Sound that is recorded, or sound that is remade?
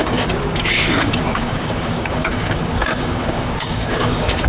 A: remade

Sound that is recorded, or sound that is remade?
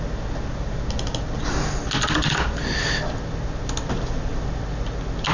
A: recorded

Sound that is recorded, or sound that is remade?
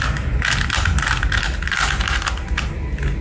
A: recorded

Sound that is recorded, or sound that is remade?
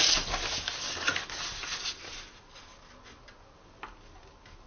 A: recorded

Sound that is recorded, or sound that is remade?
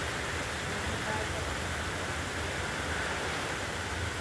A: recorded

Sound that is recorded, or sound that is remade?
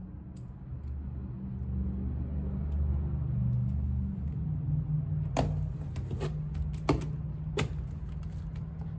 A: recorded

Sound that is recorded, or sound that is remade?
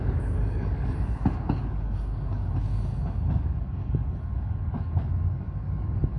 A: remade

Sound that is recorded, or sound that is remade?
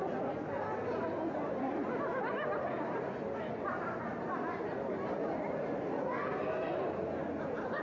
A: recorded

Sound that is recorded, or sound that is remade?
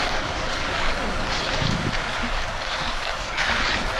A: remade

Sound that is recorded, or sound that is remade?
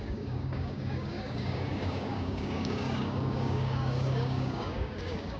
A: remade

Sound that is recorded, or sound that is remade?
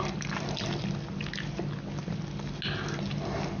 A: recorded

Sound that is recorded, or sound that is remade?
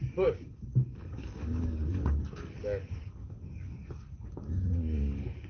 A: remade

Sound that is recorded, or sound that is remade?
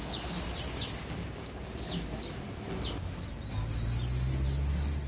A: recorded